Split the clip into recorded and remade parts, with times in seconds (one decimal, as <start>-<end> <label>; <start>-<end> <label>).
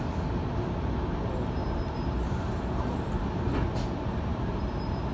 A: 0.0-1.6 recorded; 1.6-3.4 remade; 3.4-4.3 recorded; 4.3-5.1 remade